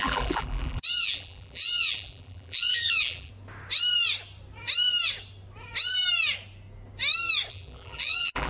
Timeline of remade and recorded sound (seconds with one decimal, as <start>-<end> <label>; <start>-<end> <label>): 0.0-3.3 remade; 3.3-7.5 recorded; 7.5-8.5 remade